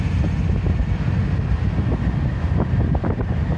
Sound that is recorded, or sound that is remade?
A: recorded